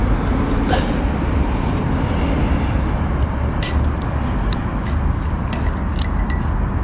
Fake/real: real